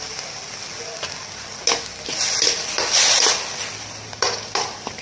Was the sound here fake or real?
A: real